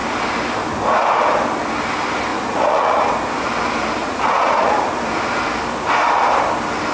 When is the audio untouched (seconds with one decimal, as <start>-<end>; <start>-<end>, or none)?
0.0-2.3; 3.1-4.0; 4.9-6.9